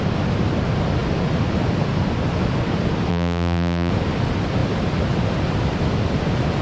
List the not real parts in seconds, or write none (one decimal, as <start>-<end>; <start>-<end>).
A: 3.1-3.9